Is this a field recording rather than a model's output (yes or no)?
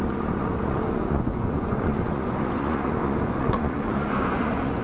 no